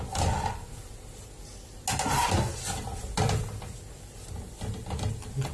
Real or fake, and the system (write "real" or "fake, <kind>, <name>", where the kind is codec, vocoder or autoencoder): real